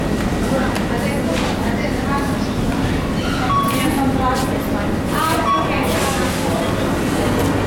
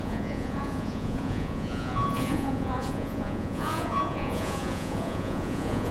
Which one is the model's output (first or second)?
second